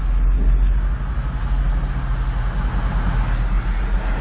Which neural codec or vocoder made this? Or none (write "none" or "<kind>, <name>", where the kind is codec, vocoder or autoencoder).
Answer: none